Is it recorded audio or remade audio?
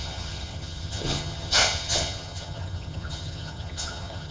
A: remade